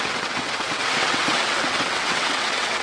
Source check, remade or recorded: remade